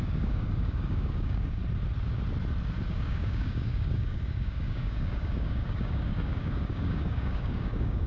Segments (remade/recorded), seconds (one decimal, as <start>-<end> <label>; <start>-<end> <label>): 0.0-1.6 remade; 1.6-2.9 recorded; 2.9-8.1 remade